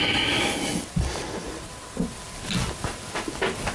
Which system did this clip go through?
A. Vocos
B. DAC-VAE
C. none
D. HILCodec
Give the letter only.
C